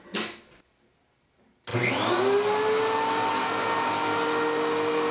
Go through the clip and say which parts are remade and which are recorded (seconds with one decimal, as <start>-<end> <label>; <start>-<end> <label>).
0.0-5.1 recorded